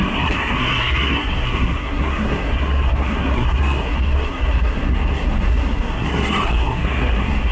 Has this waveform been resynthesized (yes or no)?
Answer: yes